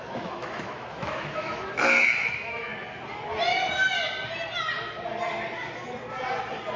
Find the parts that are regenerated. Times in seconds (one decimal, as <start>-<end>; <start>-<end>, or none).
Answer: 0.0-2.7